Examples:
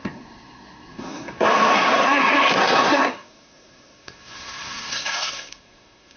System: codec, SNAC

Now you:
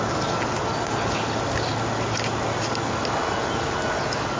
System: none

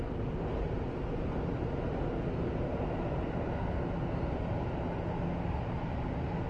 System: none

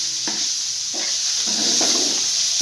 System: none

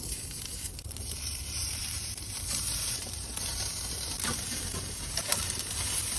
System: vocoder, BigVGAN v2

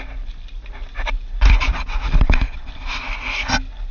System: none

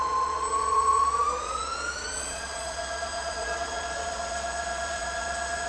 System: vocoder, Vocos